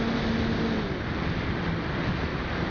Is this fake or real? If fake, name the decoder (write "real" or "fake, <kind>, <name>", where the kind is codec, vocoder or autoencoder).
real